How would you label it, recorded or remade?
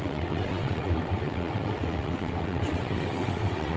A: remade